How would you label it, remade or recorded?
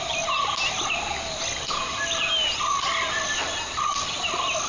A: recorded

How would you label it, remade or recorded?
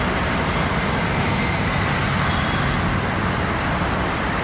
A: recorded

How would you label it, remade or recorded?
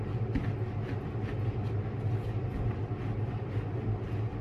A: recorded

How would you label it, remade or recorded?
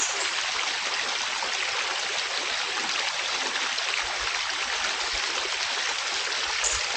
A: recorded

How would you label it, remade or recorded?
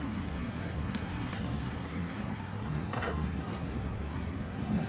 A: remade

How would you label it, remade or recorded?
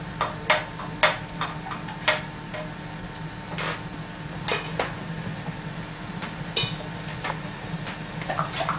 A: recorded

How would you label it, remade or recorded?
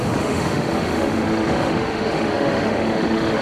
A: remade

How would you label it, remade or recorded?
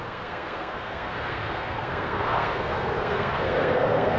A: remade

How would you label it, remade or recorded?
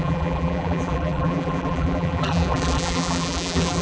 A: remade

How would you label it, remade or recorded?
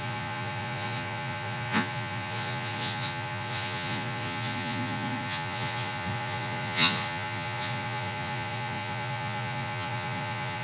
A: remade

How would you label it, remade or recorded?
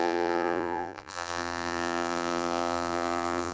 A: remade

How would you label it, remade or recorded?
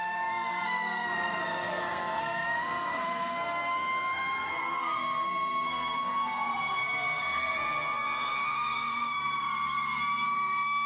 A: remade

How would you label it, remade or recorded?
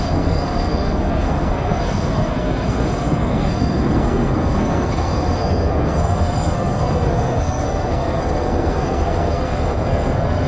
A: remade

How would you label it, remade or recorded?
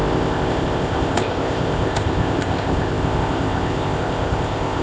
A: remade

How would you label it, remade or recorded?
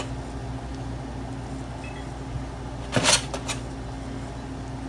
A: recorded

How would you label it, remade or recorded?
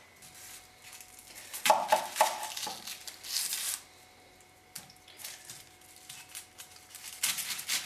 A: recorded